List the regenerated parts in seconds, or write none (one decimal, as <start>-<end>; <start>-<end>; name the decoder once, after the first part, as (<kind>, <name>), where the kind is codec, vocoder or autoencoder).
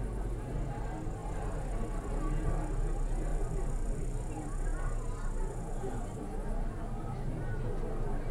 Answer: 3.3-4.3 (vocoder, BigVGAN v2)